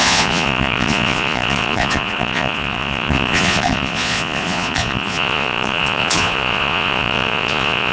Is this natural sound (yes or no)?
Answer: no